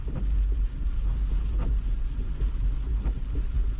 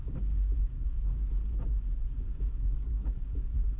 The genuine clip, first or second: first